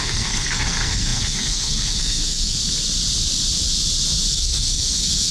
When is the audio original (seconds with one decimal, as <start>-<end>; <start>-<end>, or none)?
2.6-4.3